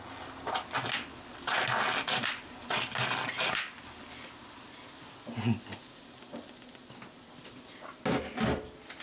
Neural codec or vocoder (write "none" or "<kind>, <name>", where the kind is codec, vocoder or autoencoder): none